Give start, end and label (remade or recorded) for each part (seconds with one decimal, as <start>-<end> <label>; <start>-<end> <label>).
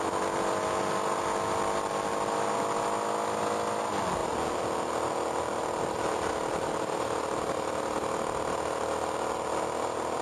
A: 0.0-10.2 recorded